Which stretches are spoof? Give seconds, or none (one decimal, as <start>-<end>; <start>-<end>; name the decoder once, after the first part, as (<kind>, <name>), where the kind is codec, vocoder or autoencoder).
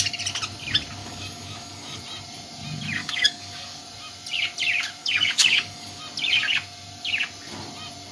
1.0-2.0 (codec, DAC); 3.0-3.8; 5.0-6.0